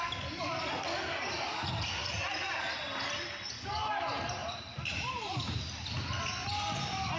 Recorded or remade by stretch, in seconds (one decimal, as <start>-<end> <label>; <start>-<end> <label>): 0.0-4.4 recorded; 4.4-6.2 remade; 6.2-7.2 recorded